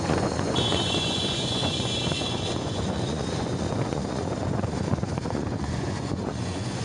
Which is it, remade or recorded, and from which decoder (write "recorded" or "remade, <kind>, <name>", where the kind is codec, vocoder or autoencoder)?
remade, vocoder, Vocos